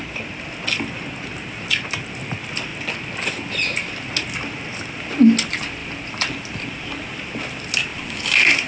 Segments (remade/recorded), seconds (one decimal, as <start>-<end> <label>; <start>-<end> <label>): 0.0-5.8 recorded; 5.8-7.4 remade; 7.4-7.9 recorded; 7.9-8.7 remade